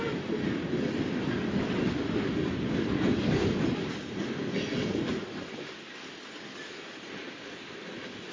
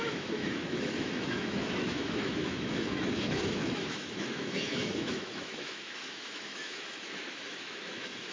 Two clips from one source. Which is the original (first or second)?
first